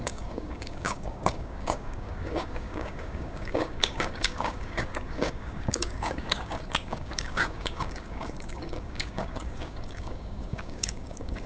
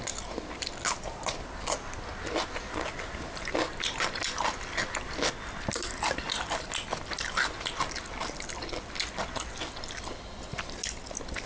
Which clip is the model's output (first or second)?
first